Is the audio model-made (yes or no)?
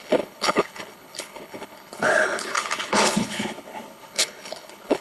yes